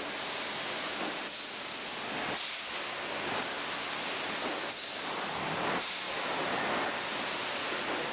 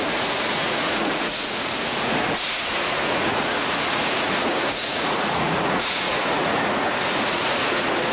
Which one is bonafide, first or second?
first